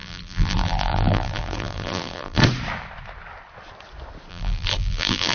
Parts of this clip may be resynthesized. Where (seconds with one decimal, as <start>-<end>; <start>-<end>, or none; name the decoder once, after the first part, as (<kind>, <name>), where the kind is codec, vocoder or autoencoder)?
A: 0.0-2.4 (vocoder, BigVGAN v2); 4.3-5.3